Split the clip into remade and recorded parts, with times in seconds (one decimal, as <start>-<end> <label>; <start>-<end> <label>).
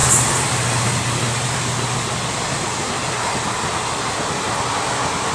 0.0-5.3 recorded